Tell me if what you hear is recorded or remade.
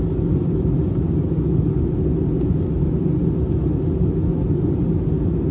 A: recorded